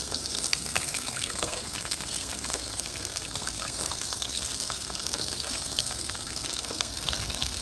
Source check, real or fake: fake